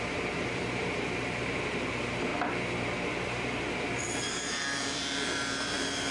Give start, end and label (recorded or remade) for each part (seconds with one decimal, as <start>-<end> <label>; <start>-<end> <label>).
0.0-2.3 remade; 2.3-3.1 recorded; 3.1-6.1 remade

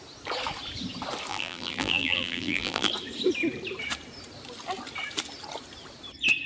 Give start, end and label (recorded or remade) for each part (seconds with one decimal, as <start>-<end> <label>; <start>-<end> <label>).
0.0-1.3 recorded; 1.3-2.9 remade; 2.9-6.5 recorded